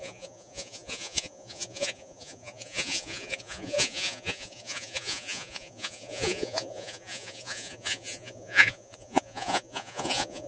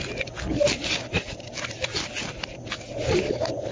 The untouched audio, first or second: second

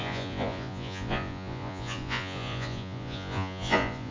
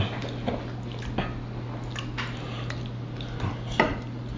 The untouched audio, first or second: second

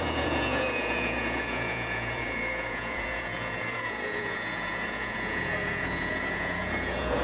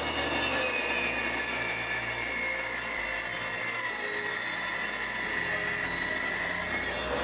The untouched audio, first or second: second